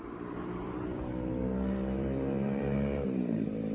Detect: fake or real fake